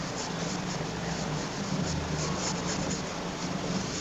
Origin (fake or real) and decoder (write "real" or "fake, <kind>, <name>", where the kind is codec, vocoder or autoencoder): real